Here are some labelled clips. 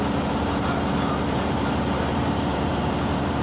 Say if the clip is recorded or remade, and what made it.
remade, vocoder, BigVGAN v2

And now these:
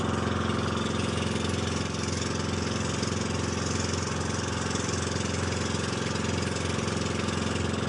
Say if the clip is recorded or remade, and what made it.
recorded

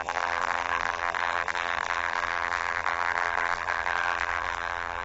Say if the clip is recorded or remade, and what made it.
remade, vocoder, BigVGAN v2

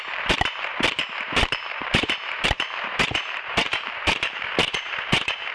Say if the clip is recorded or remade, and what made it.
remade, vocoder, BigVGAN v2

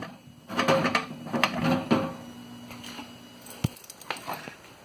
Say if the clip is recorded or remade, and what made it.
recorded